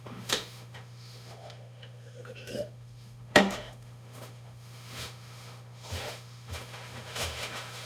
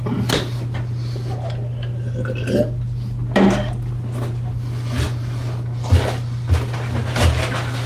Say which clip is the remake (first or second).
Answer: first